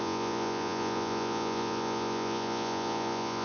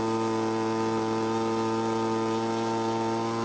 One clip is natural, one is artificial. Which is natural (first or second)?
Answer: second